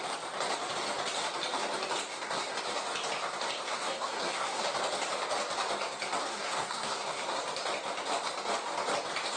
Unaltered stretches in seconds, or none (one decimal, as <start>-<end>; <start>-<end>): 0.0-2.1; 2.6-3.7; 4.6-6.2; 7.4-9.4